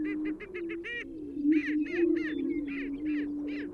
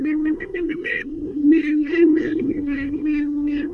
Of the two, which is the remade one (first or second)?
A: second